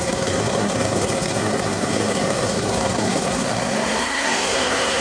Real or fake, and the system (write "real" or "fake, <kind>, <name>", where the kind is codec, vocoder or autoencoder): fake, codec, SNAC